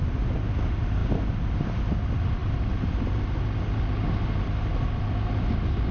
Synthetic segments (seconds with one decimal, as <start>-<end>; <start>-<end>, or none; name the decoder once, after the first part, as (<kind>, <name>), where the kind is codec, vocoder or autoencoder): 1.0-1.8 (vocoder, BigVGAN v2)